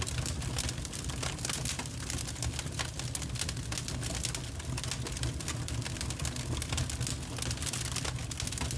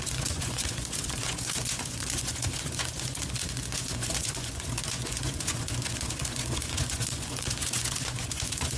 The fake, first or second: second